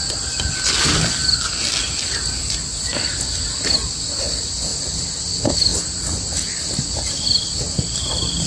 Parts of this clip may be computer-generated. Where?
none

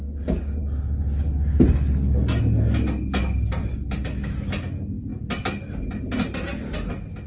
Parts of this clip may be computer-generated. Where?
none

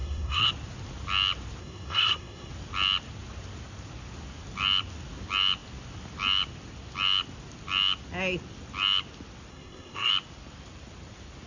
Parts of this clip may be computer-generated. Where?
0.0-0.5 (codec, SNAC); 1.6-2.5; 9.5-10.1